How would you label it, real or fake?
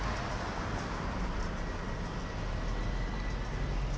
real